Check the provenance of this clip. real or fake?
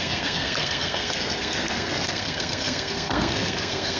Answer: fake